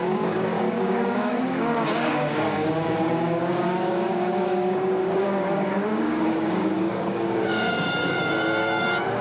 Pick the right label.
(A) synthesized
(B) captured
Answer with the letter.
A